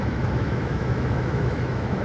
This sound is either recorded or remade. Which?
remade